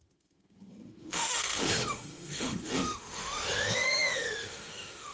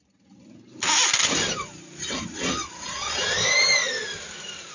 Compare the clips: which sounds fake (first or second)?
first